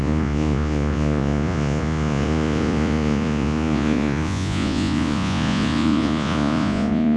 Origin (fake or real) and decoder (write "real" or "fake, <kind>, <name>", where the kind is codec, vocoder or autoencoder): fake, vocoder, Vocos